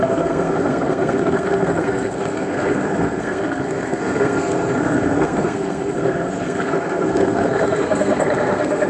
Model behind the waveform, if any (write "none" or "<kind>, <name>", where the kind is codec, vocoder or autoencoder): codec, SNAC